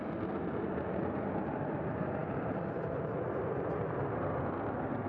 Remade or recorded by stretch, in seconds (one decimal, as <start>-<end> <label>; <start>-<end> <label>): 0.0-5.1 recorded